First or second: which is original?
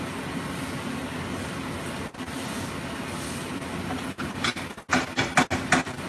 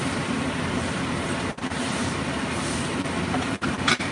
first